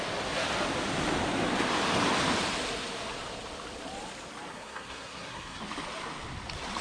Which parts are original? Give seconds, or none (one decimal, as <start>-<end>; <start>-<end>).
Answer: 0.0-4.5; 5.6-6.8

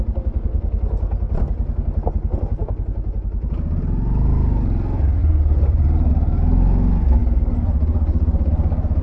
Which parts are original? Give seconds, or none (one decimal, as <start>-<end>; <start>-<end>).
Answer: 0.0-9.0